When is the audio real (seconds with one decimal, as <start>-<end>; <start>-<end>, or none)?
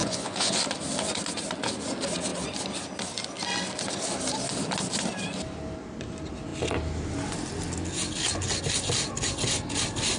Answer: 0.5-10.2